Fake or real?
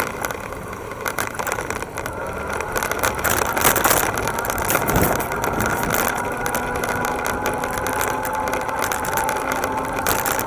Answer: real